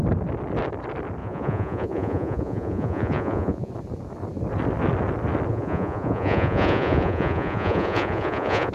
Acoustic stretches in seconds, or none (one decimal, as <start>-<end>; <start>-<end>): 0.0-1.2; 3.7-5.5

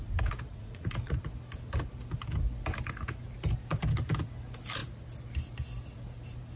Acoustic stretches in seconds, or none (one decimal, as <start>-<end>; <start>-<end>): 0.0-0.5; 1.2-6.6

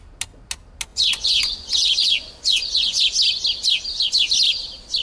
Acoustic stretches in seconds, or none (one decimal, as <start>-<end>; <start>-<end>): 0.0-0.9; 3.0-5.0